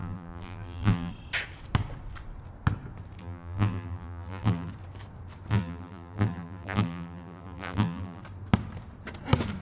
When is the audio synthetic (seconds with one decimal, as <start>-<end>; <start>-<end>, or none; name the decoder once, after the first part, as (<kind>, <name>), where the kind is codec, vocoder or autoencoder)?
0.0-1.1 (vocoder, BigVGAN v2); 3.2-4.7; 5.5-8.2